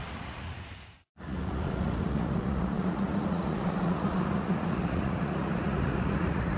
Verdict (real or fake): fake